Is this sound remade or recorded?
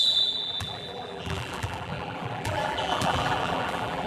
remade